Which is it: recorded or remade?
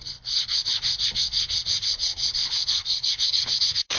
remade